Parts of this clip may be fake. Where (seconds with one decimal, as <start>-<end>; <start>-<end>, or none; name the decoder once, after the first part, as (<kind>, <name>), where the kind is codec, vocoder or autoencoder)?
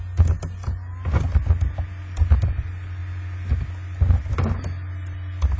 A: none